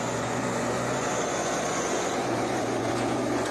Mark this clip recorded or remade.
remade